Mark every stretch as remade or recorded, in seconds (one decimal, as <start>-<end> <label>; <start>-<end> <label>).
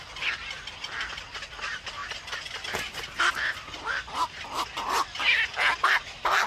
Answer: 0.0-6.5 recorded